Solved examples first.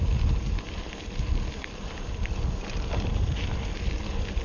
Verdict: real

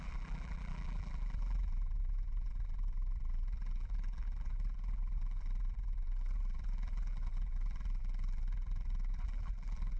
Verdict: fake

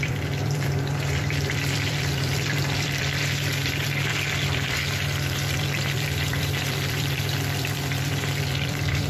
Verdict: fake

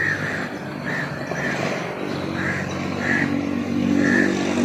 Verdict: real